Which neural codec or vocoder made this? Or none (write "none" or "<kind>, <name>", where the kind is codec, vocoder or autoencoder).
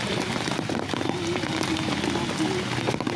none